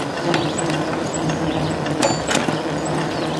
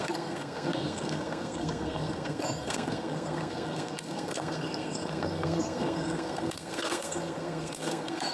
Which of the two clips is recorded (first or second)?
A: first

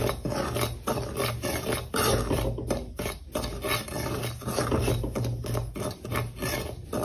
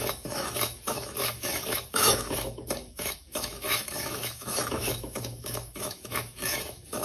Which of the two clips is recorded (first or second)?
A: first